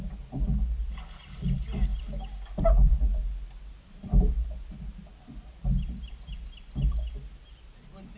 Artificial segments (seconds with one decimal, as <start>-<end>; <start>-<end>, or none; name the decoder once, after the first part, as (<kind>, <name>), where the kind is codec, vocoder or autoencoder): none